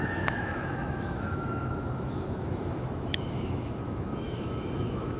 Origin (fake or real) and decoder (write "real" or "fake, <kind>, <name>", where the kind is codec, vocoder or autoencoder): fake, autoencoder, DAC-VAE